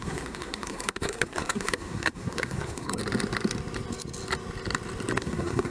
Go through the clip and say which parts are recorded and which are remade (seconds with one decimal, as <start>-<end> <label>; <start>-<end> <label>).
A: 0.0-3.0 remade; 3.0-5.2 recorded; 5.2-5.7 remade

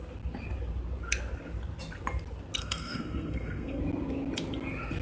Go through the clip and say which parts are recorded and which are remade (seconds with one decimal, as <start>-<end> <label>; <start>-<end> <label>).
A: 0.0-2.6 recorded; 2.6-3.8 remade; 3.8-5.0 recorded